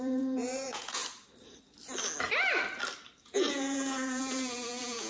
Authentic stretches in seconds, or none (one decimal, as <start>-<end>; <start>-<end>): 1.0-3.2